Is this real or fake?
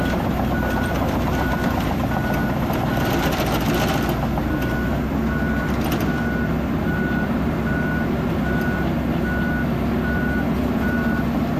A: real